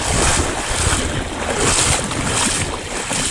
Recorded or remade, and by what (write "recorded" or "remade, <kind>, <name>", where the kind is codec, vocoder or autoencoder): recorded